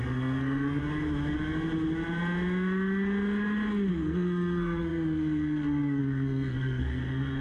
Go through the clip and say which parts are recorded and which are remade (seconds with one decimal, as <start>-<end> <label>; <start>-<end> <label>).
0.0-0.8 remade; 0.8-3.9 recorded; 3.9-7.4 remade